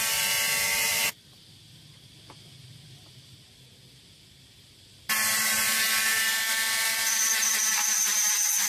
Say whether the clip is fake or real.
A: real